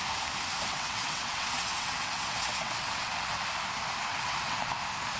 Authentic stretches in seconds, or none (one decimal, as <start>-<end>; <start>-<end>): 0.0-0.7; 3.4-4.1; 4.7-5.2